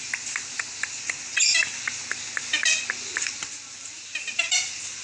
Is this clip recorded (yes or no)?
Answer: yes